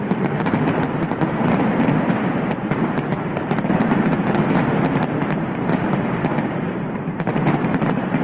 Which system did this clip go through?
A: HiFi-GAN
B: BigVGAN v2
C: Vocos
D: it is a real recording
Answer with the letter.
B